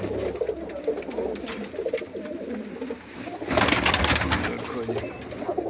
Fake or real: real